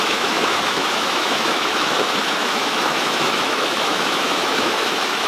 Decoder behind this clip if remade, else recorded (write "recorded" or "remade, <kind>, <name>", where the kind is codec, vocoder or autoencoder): remade, autoencoder, DAC-VAE